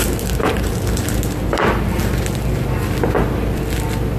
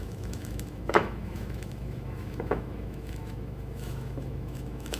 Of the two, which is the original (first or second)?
first